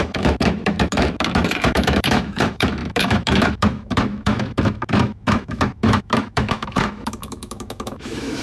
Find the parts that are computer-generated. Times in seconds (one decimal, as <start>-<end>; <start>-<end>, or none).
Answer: 0.0-8.4